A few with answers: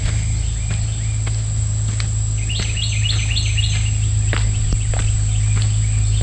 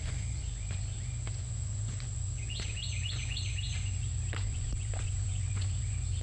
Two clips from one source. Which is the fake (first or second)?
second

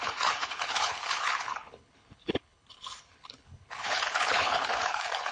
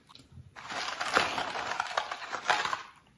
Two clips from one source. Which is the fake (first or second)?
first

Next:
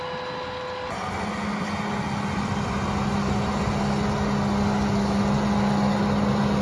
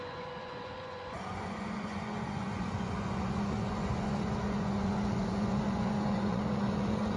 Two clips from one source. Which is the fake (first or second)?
second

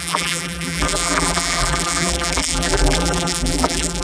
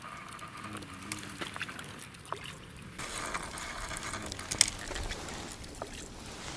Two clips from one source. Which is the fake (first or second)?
first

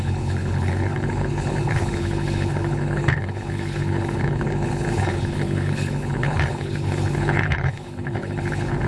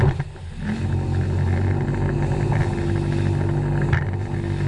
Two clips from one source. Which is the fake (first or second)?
first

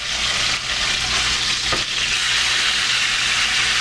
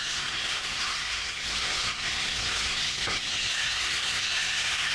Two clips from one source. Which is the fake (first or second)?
second